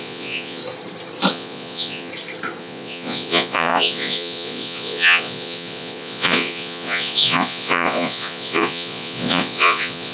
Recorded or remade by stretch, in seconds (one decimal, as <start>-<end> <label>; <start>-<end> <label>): 0.0-0.6 remade; 0.6-1.3 recorded; 1.3-2.1 remade; 2.1-2.6 recorded; 2.6-10.1 remade